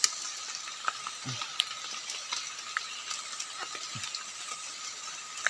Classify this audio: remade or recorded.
recorded